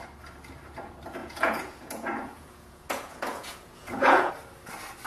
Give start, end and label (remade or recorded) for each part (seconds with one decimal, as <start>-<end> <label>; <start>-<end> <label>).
0.0-1.2 recorded; 1.2-4.3 remade; 4.3-5.1 recorded